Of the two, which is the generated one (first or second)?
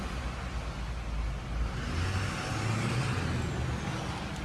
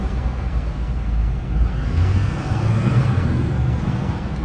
second